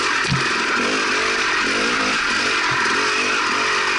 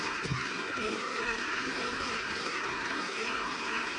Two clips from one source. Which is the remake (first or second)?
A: second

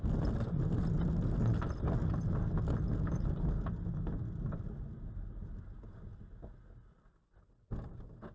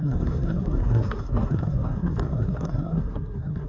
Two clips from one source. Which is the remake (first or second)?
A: second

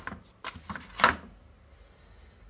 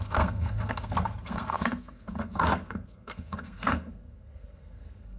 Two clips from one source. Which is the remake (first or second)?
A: second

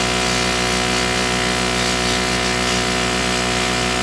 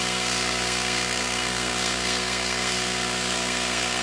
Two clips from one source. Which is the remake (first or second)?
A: second